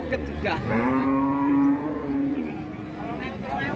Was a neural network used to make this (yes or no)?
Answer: yes